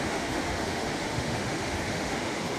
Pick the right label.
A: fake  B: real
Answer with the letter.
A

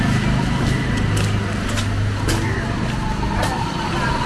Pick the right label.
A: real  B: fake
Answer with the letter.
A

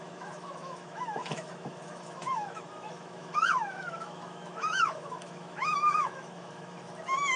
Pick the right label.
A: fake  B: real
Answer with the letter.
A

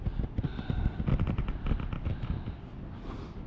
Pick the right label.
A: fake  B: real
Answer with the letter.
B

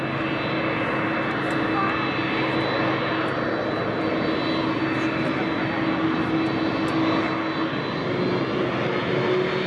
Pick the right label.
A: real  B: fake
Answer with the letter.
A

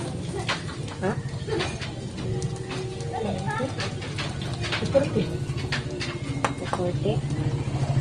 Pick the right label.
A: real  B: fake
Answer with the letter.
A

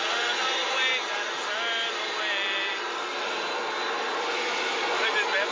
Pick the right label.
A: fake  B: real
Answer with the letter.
B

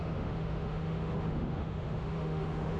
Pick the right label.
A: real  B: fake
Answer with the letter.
B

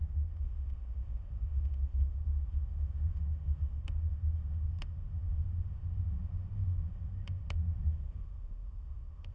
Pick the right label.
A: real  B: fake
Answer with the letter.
B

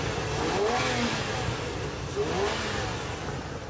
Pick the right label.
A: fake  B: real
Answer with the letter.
B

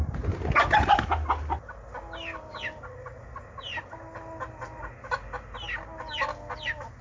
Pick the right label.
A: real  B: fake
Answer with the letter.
A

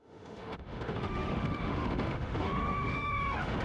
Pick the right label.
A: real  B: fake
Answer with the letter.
B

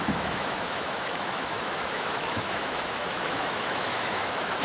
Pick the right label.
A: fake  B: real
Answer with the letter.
A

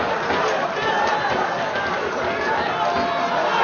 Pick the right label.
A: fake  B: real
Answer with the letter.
B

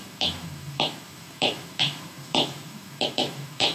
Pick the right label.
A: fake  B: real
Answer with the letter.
A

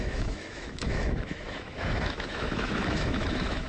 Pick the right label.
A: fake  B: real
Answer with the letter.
A